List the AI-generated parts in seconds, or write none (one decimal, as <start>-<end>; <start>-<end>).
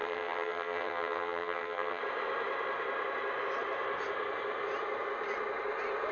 0.0-2.0